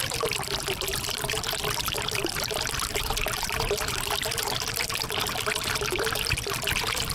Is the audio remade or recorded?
remade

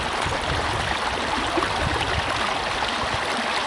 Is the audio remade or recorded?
recorded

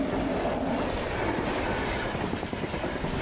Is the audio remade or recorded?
remade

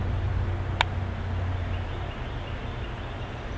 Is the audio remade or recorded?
recorded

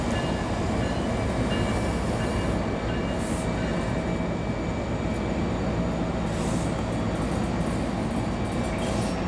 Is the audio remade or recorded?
recorded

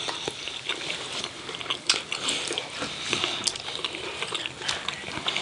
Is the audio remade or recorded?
recorded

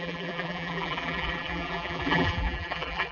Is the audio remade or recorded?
remade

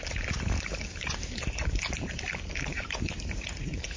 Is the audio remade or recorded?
remade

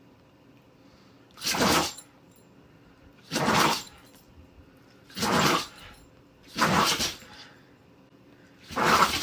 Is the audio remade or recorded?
remade